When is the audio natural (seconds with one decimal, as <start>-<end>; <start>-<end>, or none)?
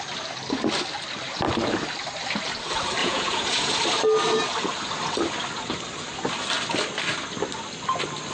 0.0-3.0; 3.7-8.3